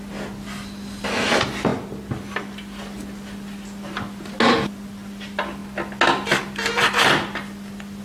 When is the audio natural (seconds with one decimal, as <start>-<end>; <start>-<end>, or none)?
0.0-8.0